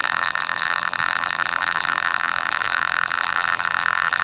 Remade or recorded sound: remade